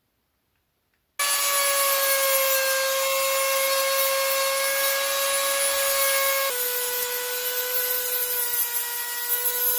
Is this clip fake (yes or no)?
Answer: no